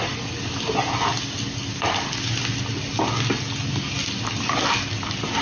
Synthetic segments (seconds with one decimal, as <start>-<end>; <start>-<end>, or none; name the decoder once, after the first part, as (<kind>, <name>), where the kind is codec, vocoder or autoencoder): none